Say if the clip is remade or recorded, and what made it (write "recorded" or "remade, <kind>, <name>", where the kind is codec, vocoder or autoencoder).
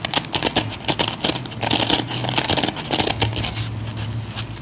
recorded